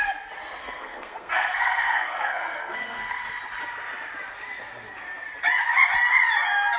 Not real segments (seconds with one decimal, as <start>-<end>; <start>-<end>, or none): 0.6-3.2